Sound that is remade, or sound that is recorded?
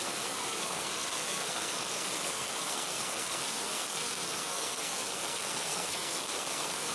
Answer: remade